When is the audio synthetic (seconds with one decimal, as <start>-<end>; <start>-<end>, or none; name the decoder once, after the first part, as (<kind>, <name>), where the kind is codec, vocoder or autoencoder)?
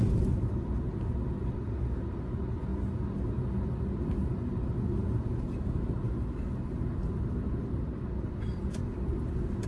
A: 0.0-2.7 (vocoder, BigVGAN v2); 7.1-9.7